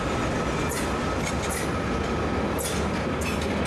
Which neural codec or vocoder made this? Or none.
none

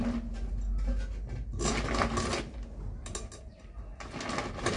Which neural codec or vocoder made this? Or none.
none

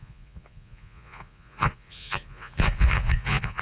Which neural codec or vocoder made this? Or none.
vocoder, Vocos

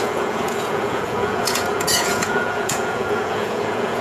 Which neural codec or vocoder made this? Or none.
vocoder, Vocos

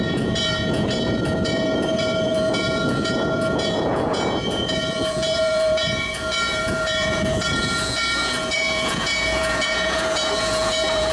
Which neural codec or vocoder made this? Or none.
vocoder, Vocos